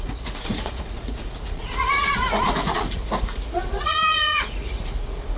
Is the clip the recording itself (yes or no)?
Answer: no